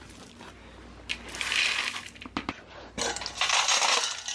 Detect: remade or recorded recorded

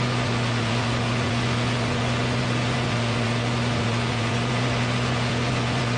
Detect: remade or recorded remade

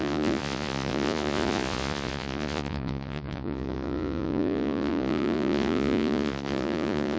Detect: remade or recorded remade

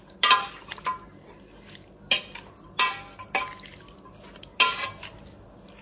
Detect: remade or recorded recorded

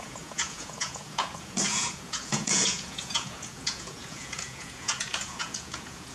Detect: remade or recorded remade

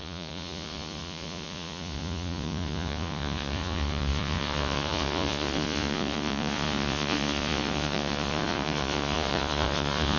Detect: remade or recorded remade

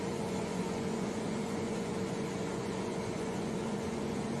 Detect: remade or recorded remade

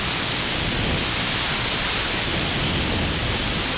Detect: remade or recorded recorded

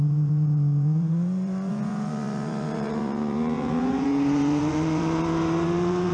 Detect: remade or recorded remade